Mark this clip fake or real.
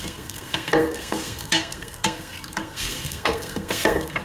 fake